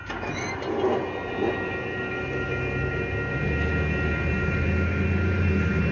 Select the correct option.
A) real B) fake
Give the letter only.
A